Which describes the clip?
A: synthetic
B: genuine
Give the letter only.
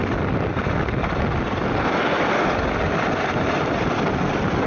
B